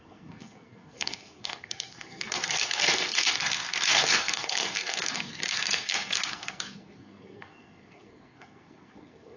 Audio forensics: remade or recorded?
remade